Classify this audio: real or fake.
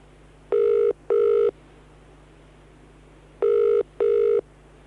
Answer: real